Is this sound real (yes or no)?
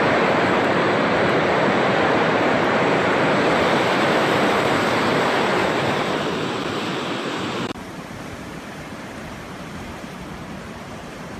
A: no